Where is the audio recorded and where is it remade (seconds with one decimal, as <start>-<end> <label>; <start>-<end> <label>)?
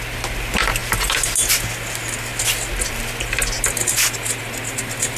0.0-5.2 recorded